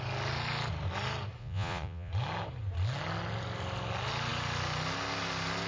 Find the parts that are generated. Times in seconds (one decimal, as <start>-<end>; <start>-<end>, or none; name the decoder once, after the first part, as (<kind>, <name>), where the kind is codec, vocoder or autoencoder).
1.4-2.1 (vocoder, Vocos)